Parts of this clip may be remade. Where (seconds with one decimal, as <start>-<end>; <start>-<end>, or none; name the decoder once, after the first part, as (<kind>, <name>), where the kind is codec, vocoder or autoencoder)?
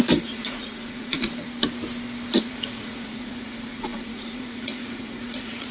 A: 0.0-1.3 (vocoder, Vocos); 2.4-5.7